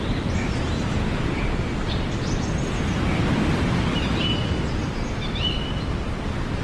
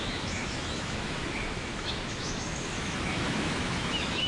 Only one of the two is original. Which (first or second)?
first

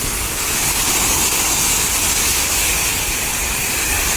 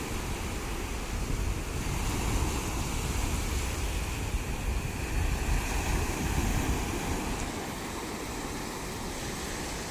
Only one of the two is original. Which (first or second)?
second